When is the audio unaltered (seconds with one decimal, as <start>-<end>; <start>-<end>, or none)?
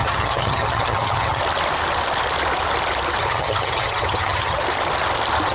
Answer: 1.4-3.2; 4.6-5.5